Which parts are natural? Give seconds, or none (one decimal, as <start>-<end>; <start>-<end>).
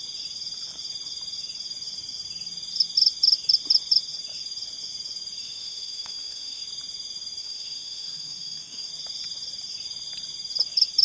0.0-5.4; 6.6-7.4; 8.9-11.0